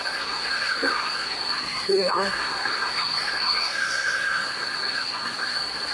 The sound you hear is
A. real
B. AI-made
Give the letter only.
B